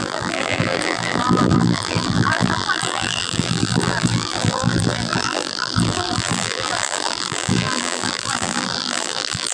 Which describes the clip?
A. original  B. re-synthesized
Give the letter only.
B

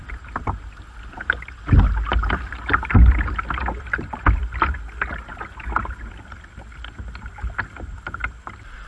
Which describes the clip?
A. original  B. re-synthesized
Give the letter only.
A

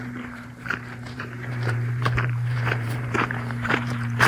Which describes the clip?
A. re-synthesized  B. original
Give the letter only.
A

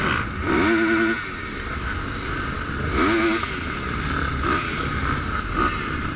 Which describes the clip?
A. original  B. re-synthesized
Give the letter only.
A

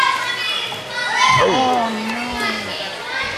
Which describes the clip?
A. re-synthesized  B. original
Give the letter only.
B